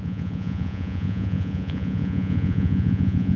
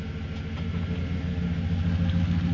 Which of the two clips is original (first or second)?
second